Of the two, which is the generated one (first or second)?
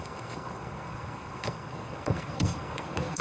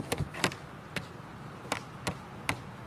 first